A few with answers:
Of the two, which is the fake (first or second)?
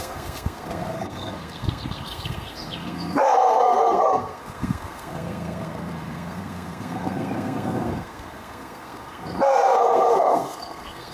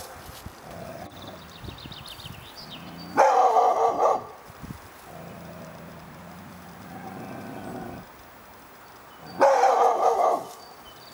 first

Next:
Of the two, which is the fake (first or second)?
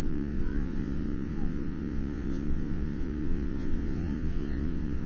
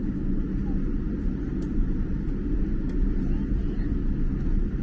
first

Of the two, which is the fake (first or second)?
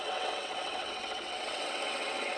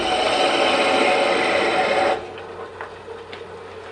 first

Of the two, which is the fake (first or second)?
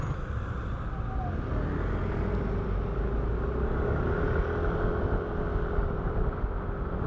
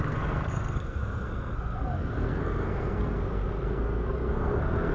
second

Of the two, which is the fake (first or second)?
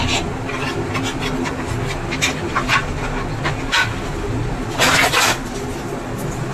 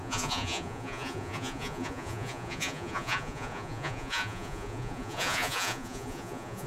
second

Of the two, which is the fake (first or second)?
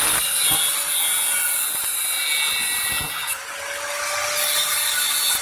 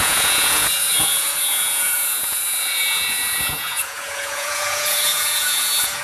second